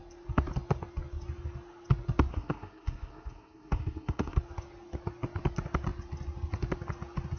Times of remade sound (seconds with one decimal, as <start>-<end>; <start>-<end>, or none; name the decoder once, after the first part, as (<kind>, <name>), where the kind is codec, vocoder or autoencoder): 2.3-4.4 (codec, SNAC)